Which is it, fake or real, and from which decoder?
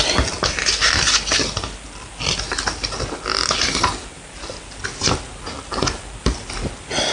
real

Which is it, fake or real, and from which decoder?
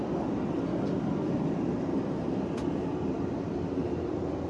real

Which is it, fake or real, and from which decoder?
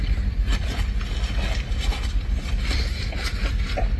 real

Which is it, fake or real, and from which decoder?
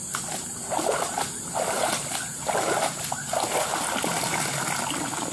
real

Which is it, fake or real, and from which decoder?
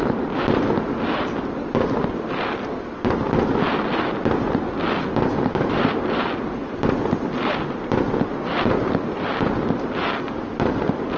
real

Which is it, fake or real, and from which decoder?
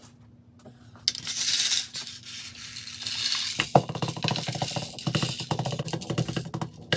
real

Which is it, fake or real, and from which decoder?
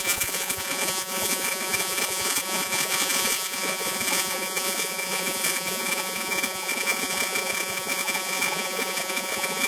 fake, vocoder, Vocos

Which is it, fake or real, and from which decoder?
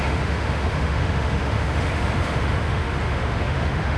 fake, autoencoder, DAC-VAE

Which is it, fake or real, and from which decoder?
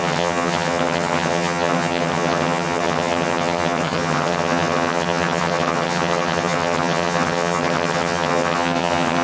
fake, vocoder, HiFi-GAN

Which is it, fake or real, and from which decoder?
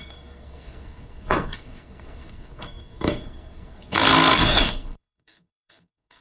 fake, codec, SNAC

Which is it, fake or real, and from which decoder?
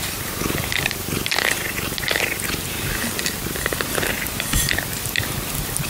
real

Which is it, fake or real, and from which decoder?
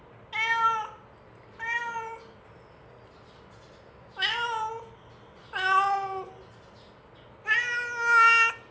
real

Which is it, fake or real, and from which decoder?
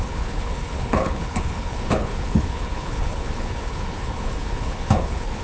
fake, codec, HILCodec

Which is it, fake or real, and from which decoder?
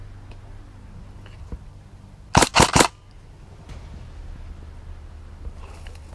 real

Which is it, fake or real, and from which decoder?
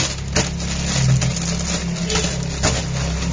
real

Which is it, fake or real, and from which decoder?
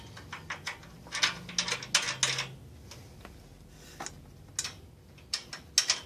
real